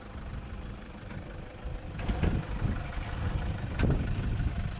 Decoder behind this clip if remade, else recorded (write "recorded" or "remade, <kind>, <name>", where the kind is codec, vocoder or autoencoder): recorded